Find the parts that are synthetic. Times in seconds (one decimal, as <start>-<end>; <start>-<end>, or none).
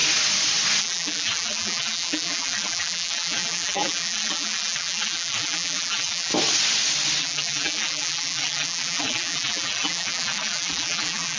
0.8-6.3; 7.2-11.4